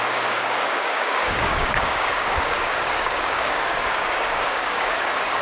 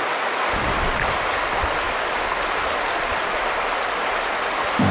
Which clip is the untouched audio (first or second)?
second